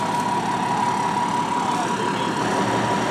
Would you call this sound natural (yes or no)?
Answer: yes